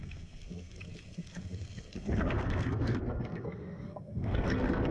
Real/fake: fake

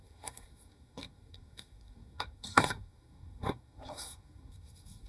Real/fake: fake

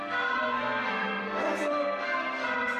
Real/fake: fake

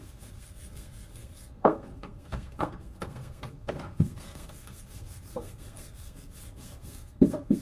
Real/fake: fake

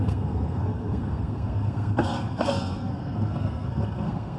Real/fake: fake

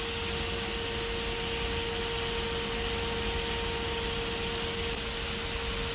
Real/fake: real